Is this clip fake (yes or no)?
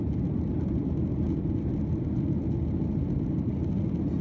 no